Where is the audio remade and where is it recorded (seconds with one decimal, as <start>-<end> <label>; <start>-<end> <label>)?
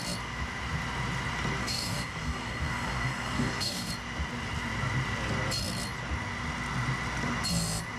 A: 0.0-1.6 recorded; 1.6-3.9 remade; 3.9-8.0 recorded